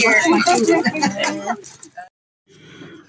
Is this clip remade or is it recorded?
recorded